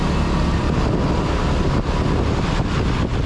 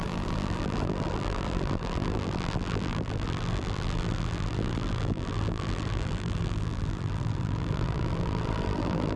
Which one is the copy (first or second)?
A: second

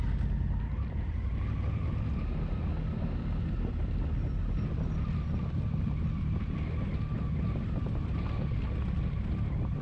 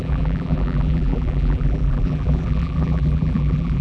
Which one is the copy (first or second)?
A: second